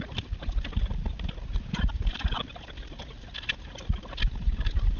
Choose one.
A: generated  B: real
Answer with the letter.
B